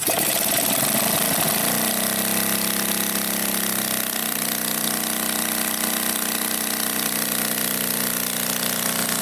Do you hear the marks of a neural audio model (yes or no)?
no